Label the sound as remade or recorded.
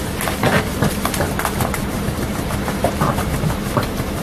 recorded